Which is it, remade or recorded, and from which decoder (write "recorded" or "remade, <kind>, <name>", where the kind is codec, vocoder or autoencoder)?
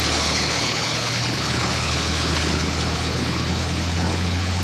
remade, codec, HILCodec